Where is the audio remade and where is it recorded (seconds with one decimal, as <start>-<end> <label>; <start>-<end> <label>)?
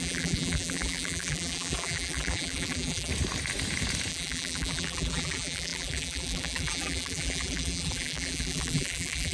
0.0-3.1 remade; 3.1-4.1 recorded; 4.1-9.3 remade